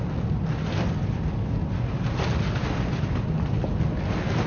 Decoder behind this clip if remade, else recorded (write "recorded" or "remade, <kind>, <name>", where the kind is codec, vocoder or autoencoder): recorded